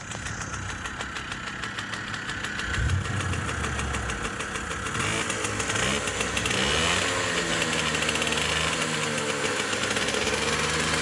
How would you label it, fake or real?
real